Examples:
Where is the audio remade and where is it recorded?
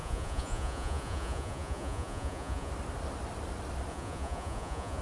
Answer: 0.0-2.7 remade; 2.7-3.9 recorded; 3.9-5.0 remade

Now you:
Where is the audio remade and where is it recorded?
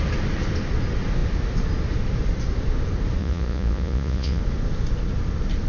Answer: 0.0-3.2 recorded; 3.2-4.4 remade; 4.4-5.7 recorded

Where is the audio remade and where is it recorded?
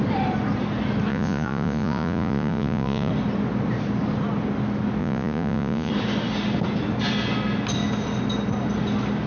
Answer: 0.0-1.1 recorded; 1.1-3.1 remade; 3.1-5.0 recorded; 5.0-5.9 remade; 5.9-9.3 recorded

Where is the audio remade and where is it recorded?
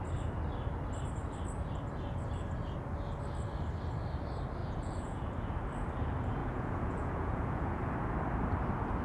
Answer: 0.0-4.6 recorded; 4.6-5.3 remade; 5.3-6.4 recorded; 6.4-7.8 remade; 7.8-9.0 recorded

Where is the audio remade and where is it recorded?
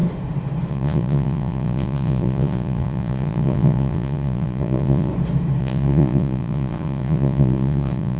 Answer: 0.0-0.7 recorded; 0.7-5.1 remade; 5.1-5.6 recorded; 5.6-8.2 remade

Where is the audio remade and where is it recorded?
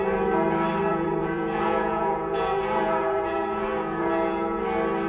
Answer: 0.0-0.9 recorded; 0.9-4.0 remade; 4.0-5.1 recorded